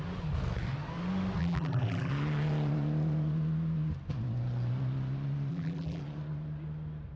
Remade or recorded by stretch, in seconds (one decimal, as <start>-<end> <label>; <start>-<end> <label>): 0.0-1.4 recorded; 1.4-2.1 remade; 2.1-5.5 recorded; 5.5-6.0 remade; 6.0-7.2 recorded